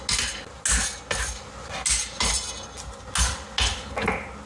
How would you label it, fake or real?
real